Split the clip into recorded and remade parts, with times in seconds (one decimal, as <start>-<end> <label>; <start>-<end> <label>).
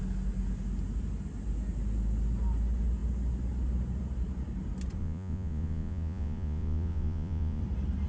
0.0-5.0 recorded; 5.0-7.6 remade; 7.6-8.1 recorded